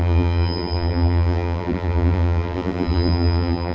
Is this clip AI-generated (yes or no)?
yes